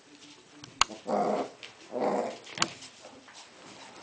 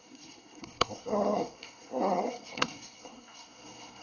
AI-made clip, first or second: second